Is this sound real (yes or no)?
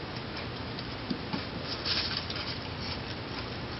yes